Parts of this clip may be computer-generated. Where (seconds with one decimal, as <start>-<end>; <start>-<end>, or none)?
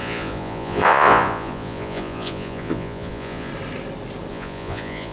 0.0-3.5; 4.3-5.1